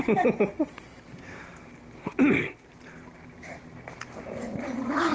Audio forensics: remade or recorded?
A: recorded